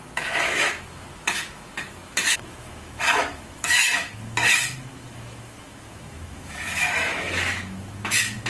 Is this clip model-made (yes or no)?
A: yes